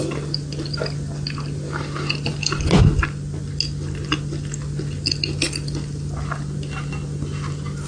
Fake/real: real